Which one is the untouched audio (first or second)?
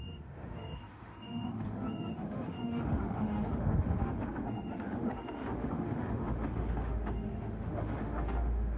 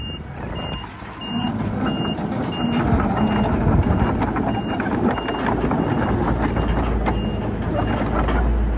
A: second